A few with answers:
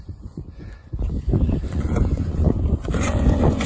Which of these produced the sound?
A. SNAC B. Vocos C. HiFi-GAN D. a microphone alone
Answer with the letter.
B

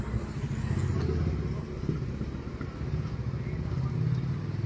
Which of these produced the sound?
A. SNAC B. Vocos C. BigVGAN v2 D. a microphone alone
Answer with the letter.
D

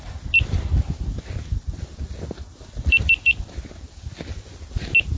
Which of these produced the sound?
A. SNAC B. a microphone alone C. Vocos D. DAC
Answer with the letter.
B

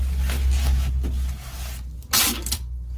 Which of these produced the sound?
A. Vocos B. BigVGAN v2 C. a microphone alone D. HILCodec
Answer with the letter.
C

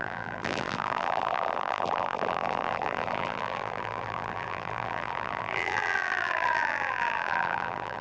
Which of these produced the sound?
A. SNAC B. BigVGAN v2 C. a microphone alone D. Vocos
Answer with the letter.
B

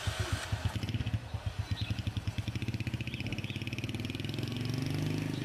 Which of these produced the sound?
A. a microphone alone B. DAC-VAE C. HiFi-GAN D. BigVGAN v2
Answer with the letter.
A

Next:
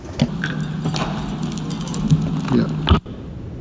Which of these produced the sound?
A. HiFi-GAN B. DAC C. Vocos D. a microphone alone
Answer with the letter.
D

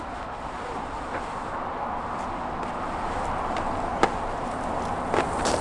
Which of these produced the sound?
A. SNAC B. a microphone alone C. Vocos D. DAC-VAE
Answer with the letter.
B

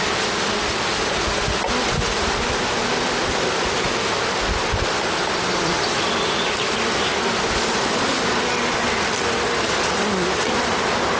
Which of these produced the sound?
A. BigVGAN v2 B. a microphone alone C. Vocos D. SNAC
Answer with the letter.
B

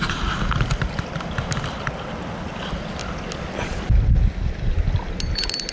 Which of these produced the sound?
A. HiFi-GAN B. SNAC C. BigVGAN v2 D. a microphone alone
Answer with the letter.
D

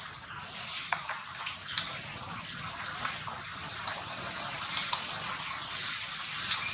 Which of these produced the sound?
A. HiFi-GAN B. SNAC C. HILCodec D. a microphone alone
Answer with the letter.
D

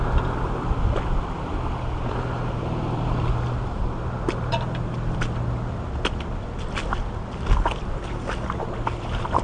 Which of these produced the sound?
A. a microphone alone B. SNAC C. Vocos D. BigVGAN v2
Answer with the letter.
A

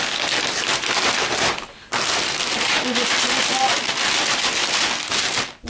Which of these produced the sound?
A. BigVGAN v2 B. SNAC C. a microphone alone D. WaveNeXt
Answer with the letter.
C